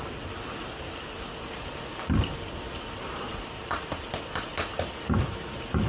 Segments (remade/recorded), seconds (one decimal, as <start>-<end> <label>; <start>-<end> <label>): 0.0-5.9 recorded